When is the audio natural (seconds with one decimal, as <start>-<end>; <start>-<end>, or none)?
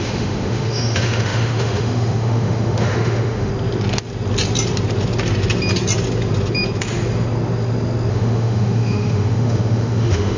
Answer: 3.5-8.1